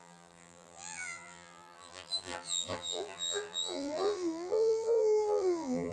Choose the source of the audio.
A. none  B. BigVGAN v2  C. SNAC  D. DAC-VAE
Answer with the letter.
B